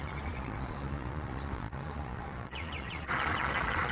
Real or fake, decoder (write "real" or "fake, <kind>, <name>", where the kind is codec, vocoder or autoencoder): fake, vocoder, Vocos